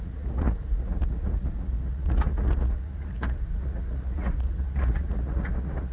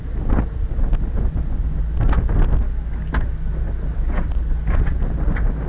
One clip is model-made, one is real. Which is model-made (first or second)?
first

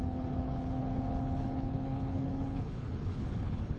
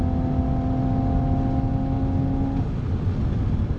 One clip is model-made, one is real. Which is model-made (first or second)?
first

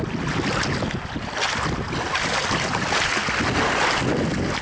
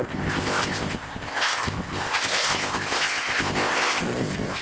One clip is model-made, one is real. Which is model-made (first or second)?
second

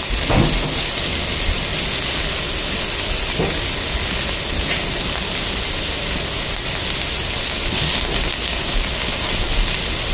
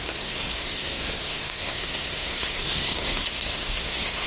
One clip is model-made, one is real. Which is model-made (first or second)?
second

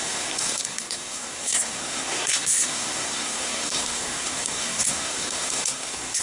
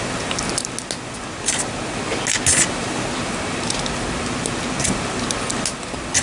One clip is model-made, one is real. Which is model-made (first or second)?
first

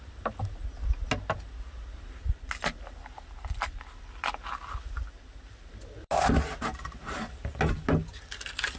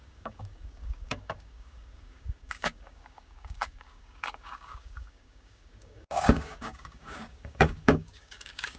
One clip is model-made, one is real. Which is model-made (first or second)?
second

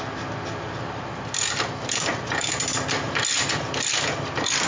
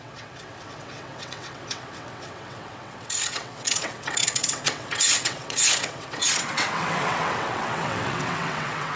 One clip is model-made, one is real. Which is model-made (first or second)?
second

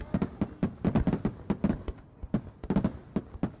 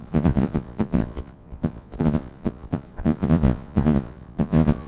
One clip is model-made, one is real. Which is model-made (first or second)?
second